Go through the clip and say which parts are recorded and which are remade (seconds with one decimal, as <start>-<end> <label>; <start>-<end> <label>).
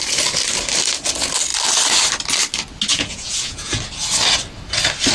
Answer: 0.0-2.9 recorded; 2.9-3.8 remade; 3.8-5.1 recorded